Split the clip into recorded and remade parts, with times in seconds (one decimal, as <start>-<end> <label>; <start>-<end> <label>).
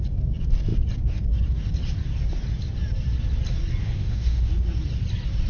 0.0-3.8 recorded; 3.8-4.5 remade; 4.5-5.5 recorded